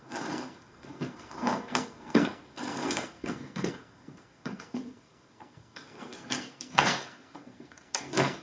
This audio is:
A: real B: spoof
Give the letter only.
B